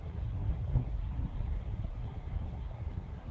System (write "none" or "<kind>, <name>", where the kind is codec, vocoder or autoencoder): codec, SNAC